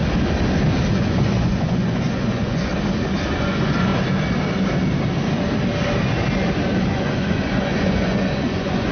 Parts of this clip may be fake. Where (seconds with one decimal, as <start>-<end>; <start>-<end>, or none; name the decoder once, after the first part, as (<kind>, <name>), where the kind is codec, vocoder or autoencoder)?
0.9-2.7 (vocoder, Vocos); 3.2-3.9; 6.9-8.9

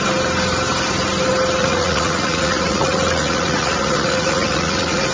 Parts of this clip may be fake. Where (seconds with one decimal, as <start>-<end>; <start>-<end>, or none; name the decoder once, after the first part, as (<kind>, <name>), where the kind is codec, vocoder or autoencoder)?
1.6-5.1 (vocoder, Vocos)

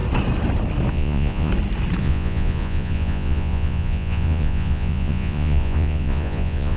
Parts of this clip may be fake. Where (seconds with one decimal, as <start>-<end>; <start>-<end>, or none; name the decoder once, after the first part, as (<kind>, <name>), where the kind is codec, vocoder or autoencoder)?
0.9-1.5 (vocoder, Vocos); 2.0-6.8

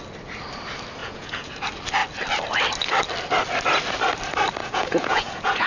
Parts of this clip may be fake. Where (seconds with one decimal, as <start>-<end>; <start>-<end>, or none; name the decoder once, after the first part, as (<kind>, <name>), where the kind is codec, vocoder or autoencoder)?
1.0-1.6 (vocoder, Vocos); 4.6-5.7

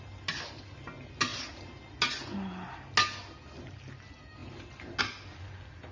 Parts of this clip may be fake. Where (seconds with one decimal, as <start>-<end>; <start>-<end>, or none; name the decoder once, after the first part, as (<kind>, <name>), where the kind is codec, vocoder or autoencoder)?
none

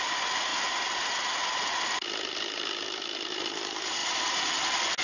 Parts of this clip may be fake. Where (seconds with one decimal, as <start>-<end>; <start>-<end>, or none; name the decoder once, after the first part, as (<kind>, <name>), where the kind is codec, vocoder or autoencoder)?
none